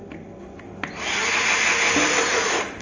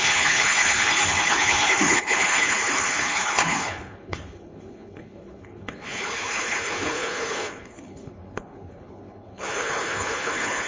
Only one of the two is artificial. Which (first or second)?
second